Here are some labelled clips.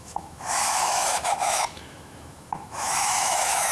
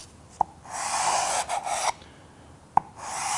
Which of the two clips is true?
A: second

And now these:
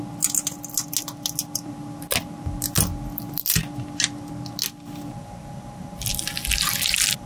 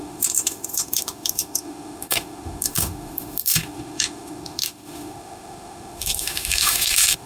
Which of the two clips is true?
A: first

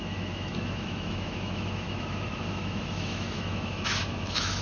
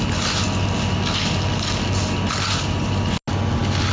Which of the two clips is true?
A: second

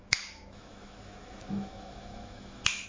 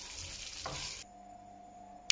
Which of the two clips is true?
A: second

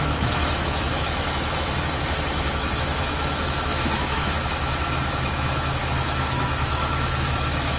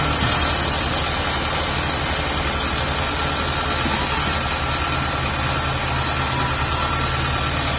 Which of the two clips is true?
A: second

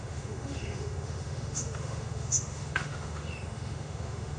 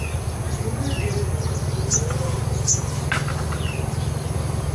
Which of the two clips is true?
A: second